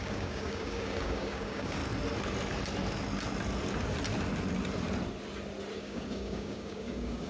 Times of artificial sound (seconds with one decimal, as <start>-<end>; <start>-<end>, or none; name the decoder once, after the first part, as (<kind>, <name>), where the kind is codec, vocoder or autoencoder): 0.0-1.8 (codec, DAC); 5.8-7.3